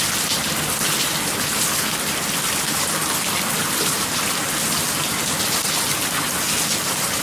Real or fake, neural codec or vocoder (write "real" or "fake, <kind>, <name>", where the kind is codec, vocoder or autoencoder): real